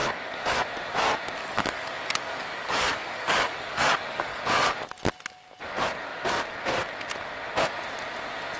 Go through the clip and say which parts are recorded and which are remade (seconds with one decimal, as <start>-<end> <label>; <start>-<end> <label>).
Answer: 0.0-0.6 remade; 0.6-1.4 recorded; 1.4-4.4 remade; 4.4-8.6 recorded